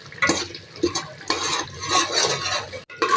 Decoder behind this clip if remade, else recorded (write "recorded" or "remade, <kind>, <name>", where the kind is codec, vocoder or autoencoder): recorded